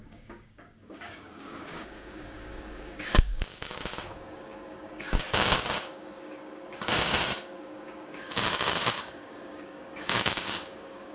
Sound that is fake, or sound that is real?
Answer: fake